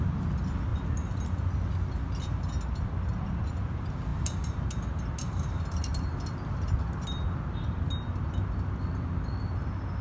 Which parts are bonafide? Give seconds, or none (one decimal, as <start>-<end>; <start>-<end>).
0.0-10.0